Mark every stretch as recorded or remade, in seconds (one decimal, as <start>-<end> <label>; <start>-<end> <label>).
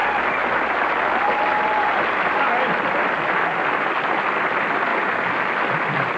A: 0.0-6.2 recorded